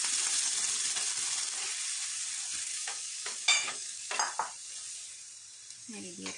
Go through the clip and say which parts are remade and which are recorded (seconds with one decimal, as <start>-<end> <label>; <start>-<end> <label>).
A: 0.0-2.7 recorded; 2.7-4.1 remade; 4.1-5.8 recorded; 5.8-6.4 remade